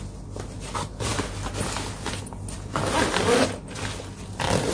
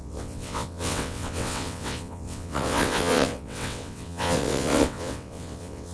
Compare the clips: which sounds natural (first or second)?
first